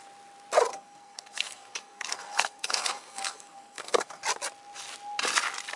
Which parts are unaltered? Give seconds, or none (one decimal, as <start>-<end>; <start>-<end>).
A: 0.0-0.7; 4.2-5.8

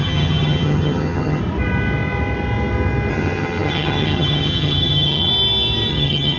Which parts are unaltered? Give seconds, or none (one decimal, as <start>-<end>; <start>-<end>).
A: 1.4-3.1; 5.3-5.9